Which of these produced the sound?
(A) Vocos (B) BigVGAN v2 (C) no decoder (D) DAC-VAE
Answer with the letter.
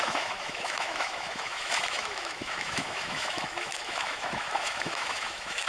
D